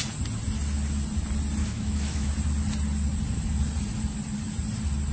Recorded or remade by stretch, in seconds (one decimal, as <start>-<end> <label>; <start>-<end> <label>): 0.0-1.6 recorded; 1.6-2.3 remade; 2.3-5.1 recorded